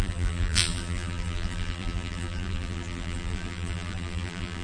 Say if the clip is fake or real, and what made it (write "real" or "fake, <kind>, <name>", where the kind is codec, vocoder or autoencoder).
fake, vocoder, BigVGAN v2